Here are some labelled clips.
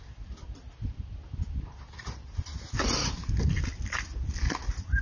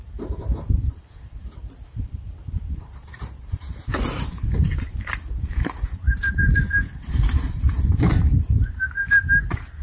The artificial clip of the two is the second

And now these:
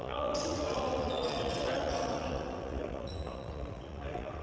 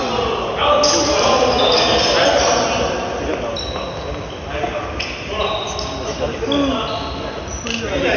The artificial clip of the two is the first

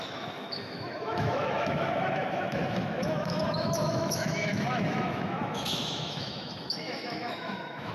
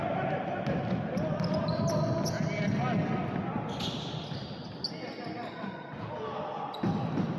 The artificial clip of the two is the first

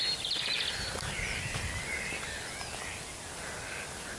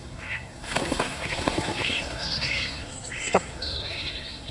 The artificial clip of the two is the second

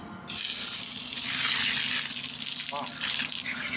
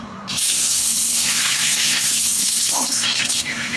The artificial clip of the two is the second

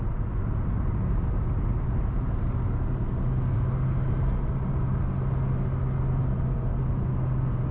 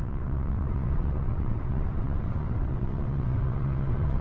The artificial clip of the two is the second